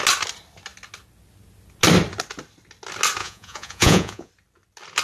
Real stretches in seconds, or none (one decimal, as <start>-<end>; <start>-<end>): 0.0-3.2; 4.3-5.0